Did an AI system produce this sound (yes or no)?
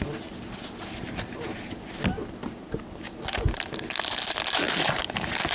no